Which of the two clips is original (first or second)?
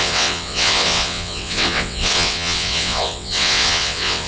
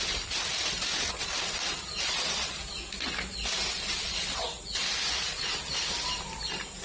second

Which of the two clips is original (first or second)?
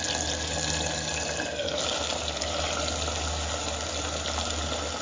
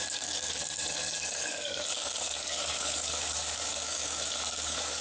first